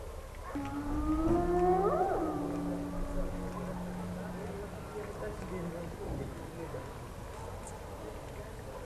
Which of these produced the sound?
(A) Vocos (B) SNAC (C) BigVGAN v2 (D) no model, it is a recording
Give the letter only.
D